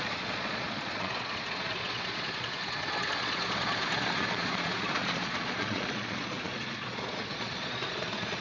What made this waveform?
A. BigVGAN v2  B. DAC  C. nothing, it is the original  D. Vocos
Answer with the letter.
D